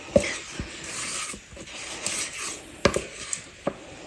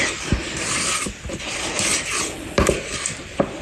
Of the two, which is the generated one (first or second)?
second